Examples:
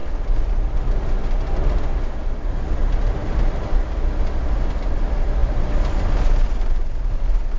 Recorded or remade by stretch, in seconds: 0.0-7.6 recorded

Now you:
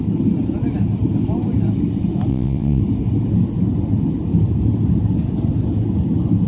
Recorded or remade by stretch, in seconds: 0.0-2.3 recorded; 2.3-2.8 remade; 2.8-6.5 recorded

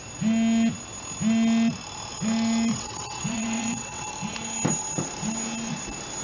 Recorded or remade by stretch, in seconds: 0.0-2.7 recorded; 2.7-4.1 remade; 4.1-6.2 recorded

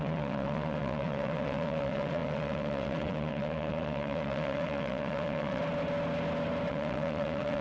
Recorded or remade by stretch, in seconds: 0.0-5.6 remade; 5.6-6.7 recorded; 6.7-7.6 remade

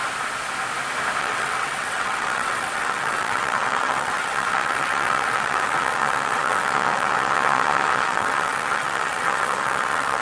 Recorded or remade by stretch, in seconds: 0.0-1.2 recorded; 1.2-10.2 remade

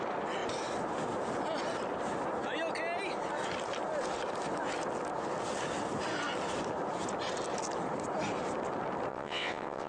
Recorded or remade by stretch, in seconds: 0.0-9.1 recorded; 9.1-9.9 remade

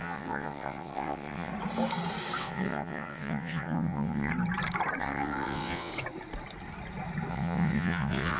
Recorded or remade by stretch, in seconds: 0.0-1.5 remade; 1.5-2.4 recorded; 2.4-4.3 remade; 4.3-5.0 recorded; 5.0-5.9 remade; 5.9-7.3 recorded; 7.3-8.4 remade

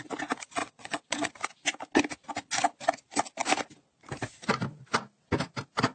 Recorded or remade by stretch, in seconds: 0.0-0.6 recorded; 0.6-1.3 remade; 1.3-5.9 recorded